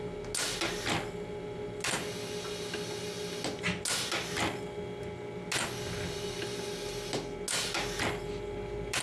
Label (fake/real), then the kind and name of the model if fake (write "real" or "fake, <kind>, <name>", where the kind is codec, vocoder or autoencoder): real